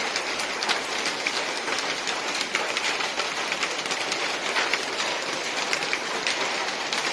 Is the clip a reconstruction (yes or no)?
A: yes